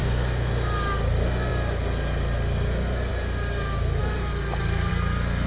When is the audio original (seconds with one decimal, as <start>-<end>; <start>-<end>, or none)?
0.5-5.5